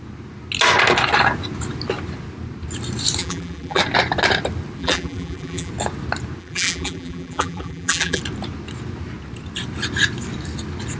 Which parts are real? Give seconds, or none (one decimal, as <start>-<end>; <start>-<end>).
0.0-3.2; 3.8-4.8; 5.7-6.4; 8.2-11.0